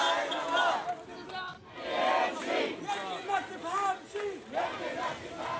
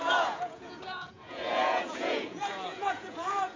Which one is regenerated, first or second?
second